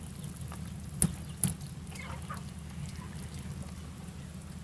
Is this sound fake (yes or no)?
no